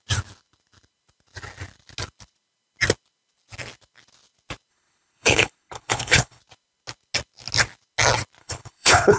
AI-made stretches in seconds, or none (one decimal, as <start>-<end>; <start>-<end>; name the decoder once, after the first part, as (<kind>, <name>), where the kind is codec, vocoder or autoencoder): 4.7-6.4 (codec, HILCodec); 8.4-9.2